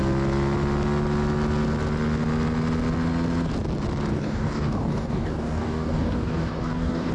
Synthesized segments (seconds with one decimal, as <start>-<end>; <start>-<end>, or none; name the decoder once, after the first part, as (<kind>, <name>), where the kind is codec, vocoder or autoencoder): 4.1-7.1 (codec, DAC)